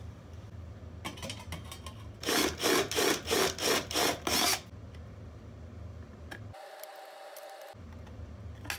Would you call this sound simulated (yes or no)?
no